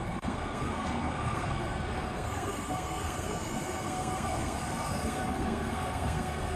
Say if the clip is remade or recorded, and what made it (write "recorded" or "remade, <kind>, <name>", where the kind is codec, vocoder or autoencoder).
remade, codec, SNAC